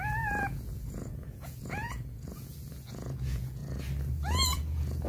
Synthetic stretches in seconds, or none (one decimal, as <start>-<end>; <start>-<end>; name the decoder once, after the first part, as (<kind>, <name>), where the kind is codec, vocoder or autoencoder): 0.0-3.6 (vocoder, Vocos); 4.1-5.1